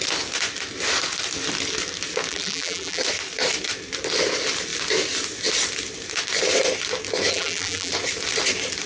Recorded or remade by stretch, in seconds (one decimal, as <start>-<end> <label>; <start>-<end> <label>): 0.0-2.3 recorded; 2.3-3.0 remade; 3.0-7.3 recorded; 7.3-7.9 remade; 7.9-8.9 recorded